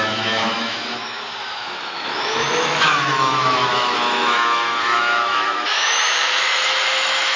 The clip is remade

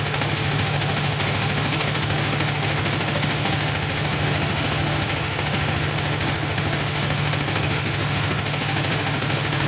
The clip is remade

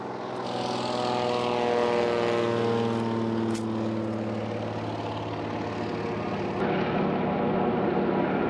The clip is recorded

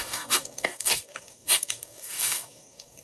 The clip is remade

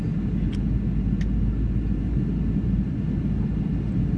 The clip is recorded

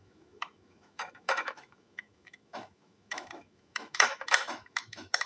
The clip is remade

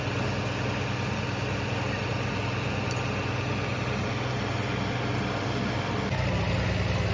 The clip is recorded